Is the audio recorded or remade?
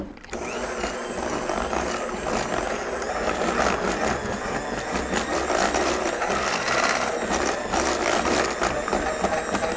recorded